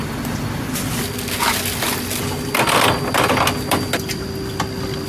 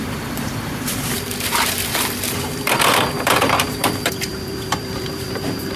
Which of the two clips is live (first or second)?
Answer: first